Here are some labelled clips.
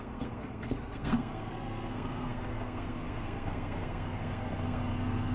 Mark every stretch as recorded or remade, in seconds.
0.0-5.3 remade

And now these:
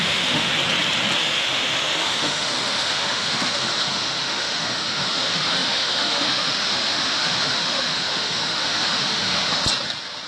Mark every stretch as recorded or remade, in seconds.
0.0-0.5 remade; 0.5-1.2 recorded; 1.2-9.6 remade; 9.6-10.3 recorded

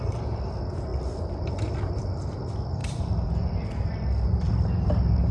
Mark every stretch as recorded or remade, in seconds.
0.0-0.9 recorded; 0.9-1.5 remade; 1.5-2.8 recorded; 2.8-4.5 remade; 4.5-5.3 recorded

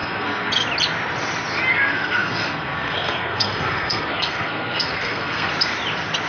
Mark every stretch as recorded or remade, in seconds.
0.0-0.5 remade; 0.5-1.7 recorded; 1.7-5.5 remade; 5.5-6.3 recorded

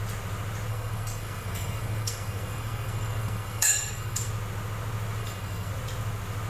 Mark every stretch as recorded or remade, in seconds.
0.0-0.7 recorded; 0.7-4.3 remade; 4.3-5.2 recorded; 5.2-5.7 remade; 5.7-6.5 recorded

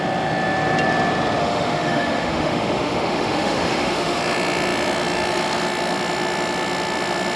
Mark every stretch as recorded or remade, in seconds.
0.0-1.4 recorded; 1.4-4.2 remade; 4.2-7.4 recorded

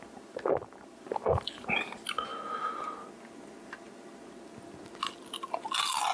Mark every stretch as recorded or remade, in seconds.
0.0-6.1 recorded